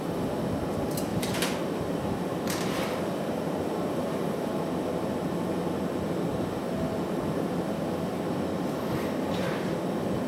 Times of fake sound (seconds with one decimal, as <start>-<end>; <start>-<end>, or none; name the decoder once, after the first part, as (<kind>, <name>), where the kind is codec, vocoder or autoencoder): 1.1-4.5 (vocoder, BigVGAN v2)